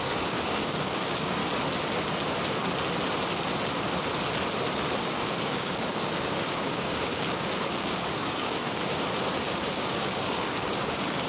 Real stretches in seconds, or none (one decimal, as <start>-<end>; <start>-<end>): 1.4-5.0; 8.8-9.4